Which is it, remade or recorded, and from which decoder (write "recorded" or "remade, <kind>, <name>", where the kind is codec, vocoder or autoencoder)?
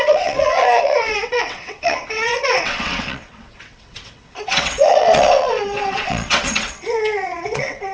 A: remade, vocoder, WaveNeXt